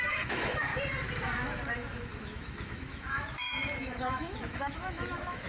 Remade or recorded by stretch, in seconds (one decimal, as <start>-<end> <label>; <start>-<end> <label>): 0.0-0.7 remade; 0.7-1.7 recorded; 1.7-5.5 remade